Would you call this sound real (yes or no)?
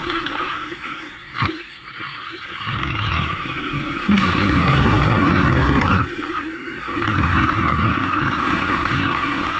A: no